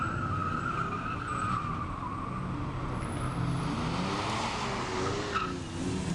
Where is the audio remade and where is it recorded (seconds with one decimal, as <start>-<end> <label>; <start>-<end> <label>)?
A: 0.0-6.1 recorded